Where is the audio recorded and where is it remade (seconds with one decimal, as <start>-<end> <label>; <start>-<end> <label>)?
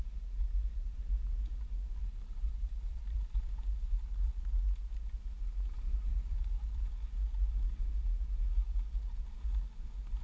0.0-2.0 recorded; 2.0-4.4 remade; 4.4-6.1 recorded; 6.1-6.9 remade; 6.9-10.2 recorded